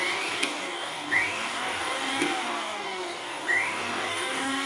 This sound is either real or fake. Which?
fake